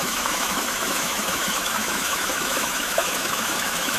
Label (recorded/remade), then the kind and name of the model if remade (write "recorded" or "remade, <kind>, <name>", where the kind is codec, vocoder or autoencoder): remade, autoencoder, DAC-VAE